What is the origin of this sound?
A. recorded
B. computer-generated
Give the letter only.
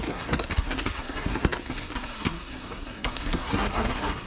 B